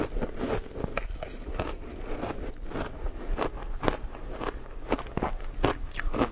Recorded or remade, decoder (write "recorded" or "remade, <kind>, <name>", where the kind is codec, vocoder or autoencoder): recorded